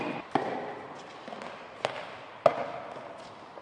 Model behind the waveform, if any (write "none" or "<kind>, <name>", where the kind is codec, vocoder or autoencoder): none